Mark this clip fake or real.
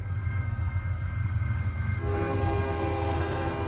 fake